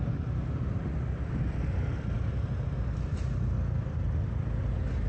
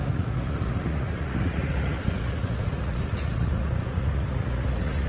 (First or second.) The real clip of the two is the first